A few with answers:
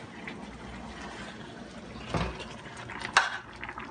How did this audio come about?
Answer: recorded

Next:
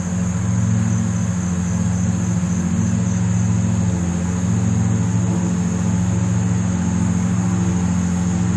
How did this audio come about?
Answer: recorded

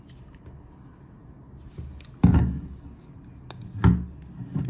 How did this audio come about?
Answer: recorded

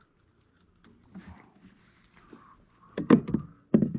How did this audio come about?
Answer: recorded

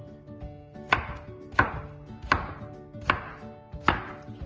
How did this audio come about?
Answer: recorded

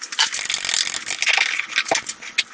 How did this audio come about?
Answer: recorded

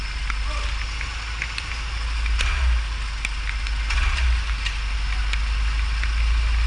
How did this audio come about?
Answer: recorded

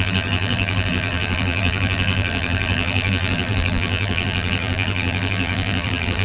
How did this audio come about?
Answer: remade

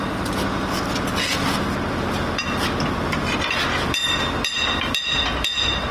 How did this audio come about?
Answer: recorded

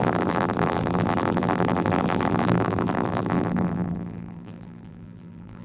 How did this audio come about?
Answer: remade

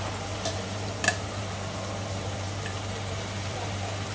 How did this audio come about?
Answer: remade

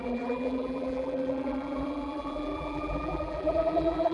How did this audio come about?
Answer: remade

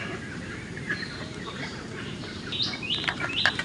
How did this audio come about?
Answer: remade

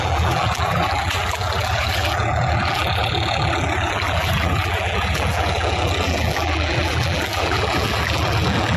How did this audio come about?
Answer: remade